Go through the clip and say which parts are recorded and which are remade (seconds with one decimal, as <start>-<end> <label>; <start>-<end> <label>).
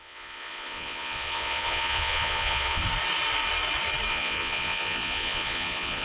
0.0-2.8 remade; 2.8-4.1 recorded; 4.1-6.0 remade